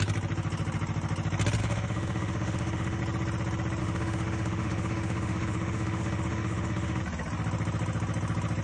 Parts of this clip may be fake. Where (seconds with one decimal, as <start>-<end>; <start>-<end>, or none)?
1.6-3.0; 3.8-7.0